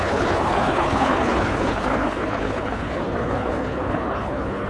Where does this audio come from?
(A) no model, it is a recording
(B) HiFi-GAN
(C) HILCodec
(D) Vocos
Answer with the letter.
C